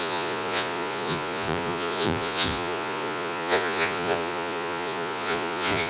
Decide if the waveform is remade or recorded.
remade